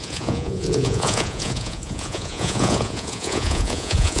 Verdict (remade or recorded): remade